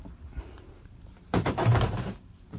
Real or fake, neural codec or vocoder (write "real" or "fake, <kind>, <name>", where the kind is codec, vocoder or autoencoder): fake, vocoder, BigVGAN v2